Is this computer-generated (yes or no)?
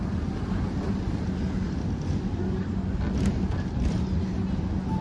no